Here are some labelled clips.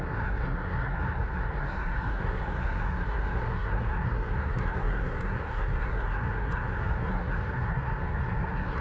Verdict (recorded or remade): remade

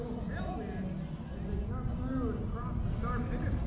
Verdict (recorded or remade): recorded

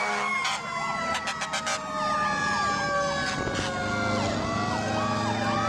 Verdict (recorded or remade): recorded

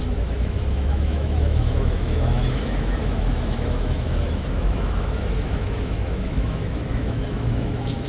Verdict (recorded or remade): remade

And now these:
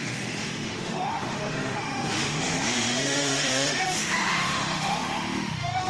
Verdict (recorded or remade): remade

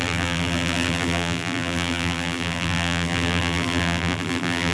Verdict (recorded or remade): remade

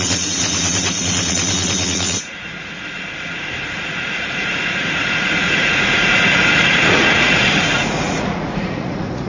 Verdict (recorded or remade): remade